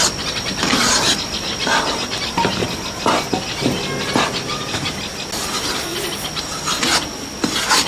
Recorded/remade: recorded